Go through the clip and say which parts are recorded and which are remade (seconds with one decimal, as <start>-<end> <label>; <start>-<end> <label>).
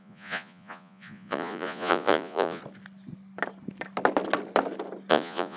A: 0.0-2.6 remade; 2.6-5.1 recorded; 5.1-5.6 remade